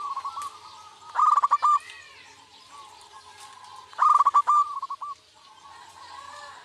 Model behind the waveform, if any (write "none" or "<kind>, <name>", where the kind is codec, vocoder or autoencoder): none